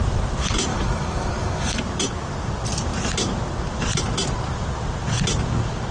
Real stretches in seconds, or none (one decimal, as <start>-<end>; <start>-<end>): 0.0-0.7; 1.8-5.9